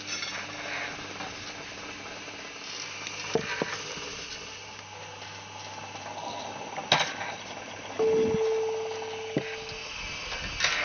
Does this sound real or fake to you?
real